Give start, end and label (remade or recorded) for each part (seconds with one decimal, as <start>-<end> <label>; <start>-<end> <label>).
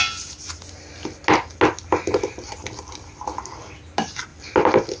0.0-5.0 recorded